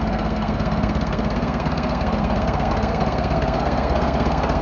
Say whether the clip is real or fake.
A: fake